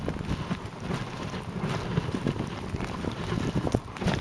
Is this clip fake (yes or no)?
no